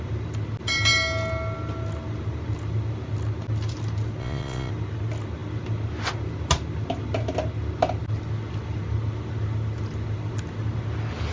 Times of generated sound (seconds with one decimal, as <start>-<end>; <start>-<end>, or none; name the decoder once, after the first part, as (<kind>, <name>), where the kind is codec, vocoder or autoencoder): 4.2-4.7 (vocoder, Vocos)